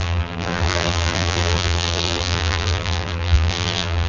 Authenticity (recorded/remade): remade